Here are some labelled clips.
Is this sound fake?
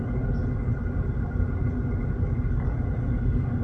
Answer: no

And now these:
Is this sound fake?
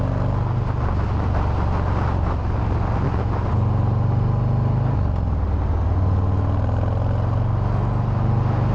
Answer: no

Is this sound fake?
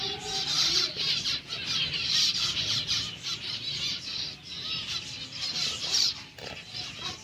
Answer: yes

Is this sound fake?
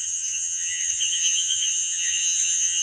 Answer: yes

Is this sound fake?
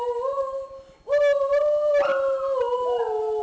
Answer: no